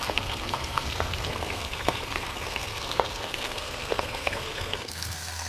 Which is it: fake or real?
fake